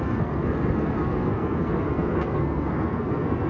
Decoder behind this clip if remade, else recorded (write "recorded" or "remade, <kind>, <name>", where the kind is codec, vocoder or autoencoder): remade, codec, SNAC